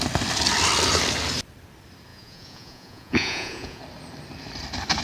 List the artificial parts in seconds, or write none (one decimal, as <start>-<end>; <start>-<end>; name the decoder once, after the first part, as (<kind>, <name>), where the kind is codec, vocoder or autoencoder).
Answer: 2.1-3.8 (vocoder, Vocos)